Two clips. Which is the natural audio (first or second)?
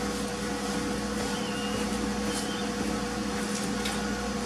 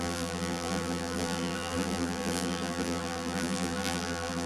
first